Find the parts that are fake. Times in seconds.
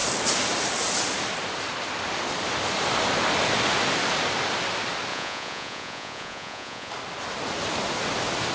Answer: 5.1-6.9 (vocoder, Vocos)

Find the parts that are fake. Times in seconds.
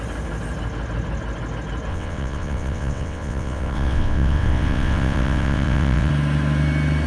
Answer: 1.9-6.1 (vocoder, WaveNeXt)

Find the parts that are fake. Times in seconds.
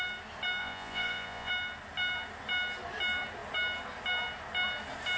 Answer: 0.6-1.5 (vocoder, Vocos)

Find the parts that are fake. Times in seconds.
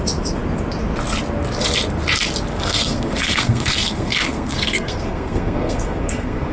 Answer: 2.5-6.5 (codec, SNAC)